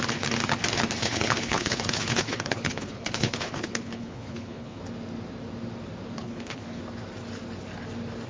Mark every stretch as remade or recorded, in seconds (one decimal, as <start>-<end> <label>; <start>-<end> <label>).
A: 0.0-1.0 recorded; 1.0-4.8 remade; 4.8-6.2 recorded; 6.2-6.8 remade; 6.8-8.3 recorded